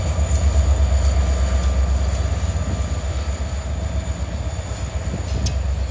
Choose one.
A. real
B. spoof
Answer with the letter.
A